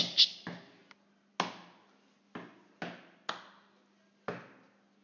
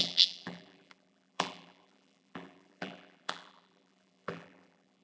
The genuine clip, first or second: first